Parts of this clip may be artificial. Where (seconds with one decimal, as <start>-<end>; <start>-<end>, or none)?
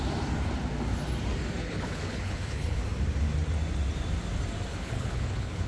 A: 1.6-2.8; 4.7-5.7